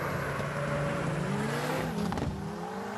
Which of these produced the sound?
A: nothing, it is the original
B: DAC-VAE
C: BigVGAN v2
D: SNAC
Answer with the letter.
A